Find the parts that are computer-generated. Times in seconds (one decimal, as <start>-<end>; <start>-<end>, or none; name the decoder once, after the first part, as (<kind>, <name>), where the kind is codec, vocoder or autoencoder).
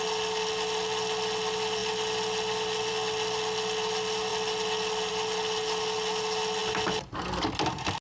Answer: none